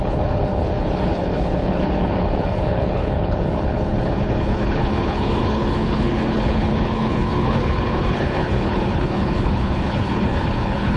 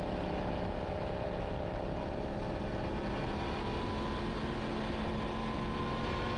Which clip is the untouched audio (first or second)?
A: second